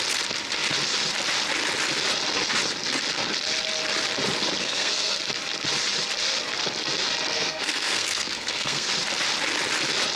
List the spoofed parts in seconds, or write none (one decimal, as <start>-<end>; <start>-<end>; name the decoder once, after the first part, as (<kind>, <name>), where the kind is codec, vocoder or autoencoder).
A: 4.6-5.2 (codec, SNAC); 7.3-8.9